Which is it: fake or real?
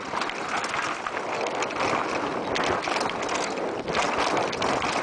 real